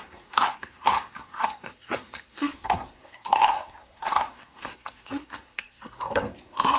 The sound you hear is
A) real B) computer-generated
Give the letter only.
B